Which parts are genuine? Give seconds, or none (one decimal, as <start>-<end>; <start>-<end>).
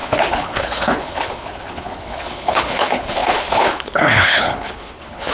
none